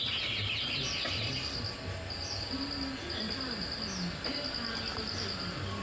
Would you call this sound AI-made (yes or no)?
no